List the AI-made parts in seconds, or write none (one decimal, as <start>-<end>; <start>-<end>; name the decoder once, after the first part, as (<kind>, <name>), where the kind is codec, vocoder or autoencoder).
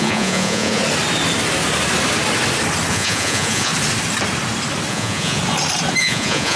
0.0-0.8 (vocoder, Vocos); 2.9-3.7; 4.9-5.4; 6.0-6.6